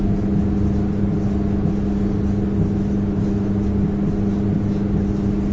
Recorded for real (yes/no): yes